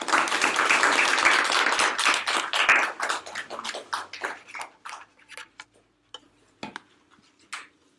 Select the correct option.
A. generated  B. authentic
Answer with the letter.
B